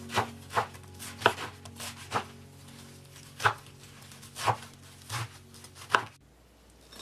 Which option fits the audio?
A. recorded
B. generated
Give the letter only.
A